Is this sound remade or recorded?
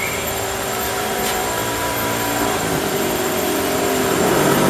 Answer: remade